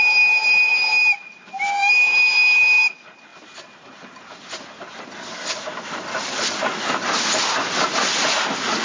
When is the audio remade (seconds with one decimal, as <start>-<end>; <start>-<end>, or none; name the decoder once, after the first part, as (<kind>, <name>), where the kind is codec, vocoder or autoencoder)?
none